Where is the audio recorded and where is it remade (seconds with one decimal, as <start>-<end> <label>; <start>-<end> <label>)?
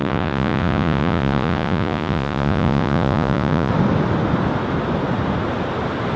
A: 0.0-3.7 remade; 3.7-6.2 recorded